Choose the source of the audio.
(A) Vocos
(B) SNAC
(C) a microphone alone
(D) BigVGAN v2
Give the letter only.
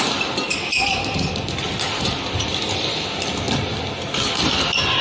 C